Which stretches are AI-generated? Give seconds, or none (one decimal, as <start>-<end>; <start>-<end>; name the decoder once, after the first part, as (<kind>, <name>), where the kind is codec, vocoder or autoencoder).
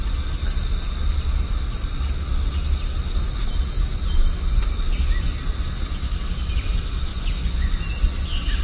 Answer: 7.1-7.7 (vocoder, Vocos)